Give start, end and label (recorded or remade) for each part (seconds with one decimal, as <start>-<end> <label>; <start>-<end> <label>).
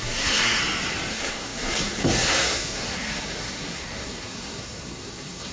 0.0-0.6 remade; 0.6-1.1 recorded; 1.1-5.5 remade